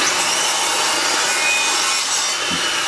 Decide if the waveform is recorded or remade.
recorded